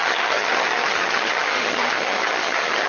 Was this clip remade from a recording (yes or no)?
yes